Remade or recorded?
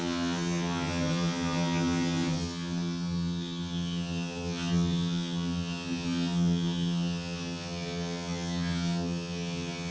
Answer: remade